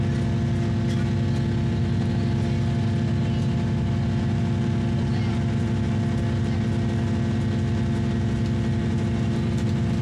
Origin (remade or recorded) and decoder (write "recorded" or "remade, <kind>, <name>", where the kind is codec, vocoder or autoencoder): recorded